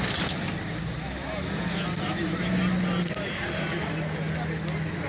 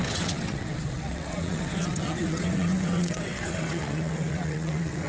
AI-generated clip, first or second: second